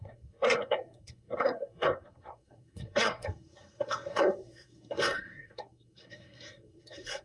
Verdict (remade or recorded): remade